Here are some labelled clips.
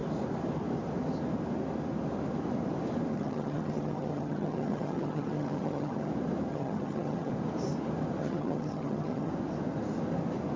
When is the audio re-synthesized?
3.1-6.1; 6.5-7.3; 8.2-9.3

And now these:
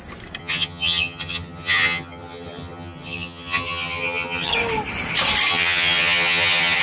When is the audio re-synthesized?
0.4-4.5; 5.5-6.8

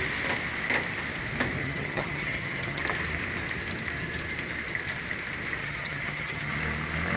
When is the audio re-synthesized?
1.6-2.8; 5.6-6.6

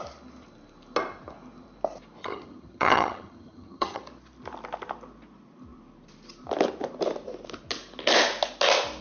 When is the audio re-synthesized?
2.2-4.0

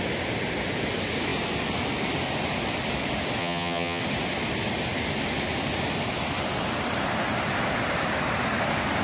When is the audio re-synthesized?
3.4-4.0

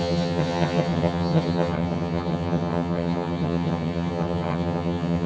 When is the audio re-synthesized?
0.0-5.3

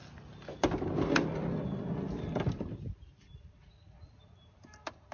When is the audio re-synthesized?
none